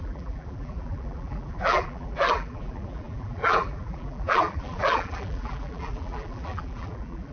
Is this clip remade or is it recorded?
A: remade